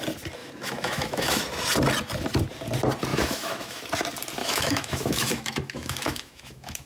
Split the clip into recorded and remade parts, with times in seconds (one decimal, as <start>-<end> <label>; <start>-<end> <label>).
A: 0.0-0.4 recorded; 0.4-1.4 remade; 1.4-3.1 recorded; 3.1-3.8 remade; 3.8-4.4 recorded; 4.4-6.9 remade